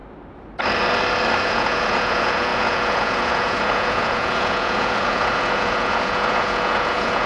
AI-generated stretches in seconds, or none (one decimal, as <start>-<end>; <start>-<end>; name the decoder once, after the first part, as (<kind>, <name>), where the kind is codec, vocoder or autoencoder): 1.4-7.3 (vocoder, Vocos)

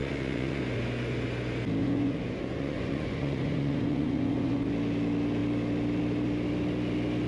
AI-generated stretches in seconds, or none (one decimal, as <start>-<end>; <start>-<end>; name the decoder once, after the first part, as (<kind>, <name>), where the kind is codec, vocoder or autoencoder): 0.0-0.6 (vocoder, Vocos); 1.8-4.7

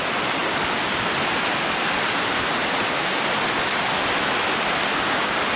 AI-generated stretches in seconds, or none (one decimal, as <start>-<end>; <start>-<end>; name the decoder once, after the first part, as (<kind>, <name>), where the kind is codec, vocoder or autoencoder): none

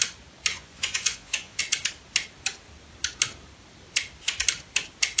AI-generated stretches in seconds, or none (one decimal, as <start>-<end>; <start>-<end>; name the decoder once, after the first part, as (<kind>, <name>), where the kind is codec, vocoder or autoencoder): 0.5-1.6 (vocoder, Vocos)